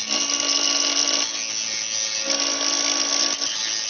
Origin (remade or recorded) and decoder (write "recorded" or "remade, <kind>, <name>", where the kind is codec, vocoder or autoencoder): recorded